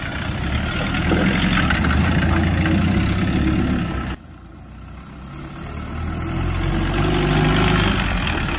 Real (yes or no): yes